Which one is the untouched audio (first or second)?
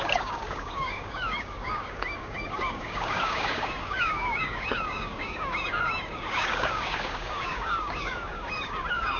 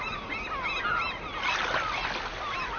second